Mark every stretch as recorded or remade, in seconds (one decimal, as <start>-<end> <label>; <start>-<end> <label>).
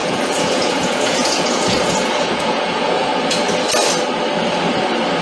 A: 0.0-3.1 remade; 3.1-5.2 recorded